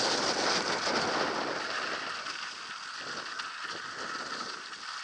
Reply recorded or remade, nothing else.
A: recorded